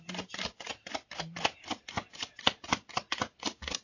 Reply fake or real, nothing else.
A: real